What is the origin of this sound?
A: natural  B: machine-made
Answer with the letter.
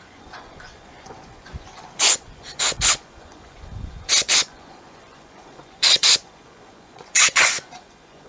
B